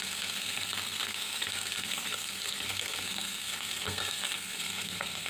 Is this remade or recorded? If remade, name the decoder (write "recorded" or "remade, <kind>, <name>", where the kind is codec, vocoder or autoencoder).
remade, codec, SNAC